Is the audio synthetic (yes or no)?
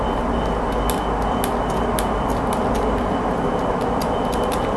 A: no